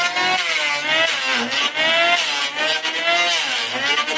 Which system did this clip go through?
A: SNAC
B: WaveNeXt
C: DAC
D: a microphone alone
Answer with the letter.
D